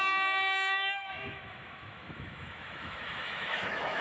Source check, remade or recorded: remade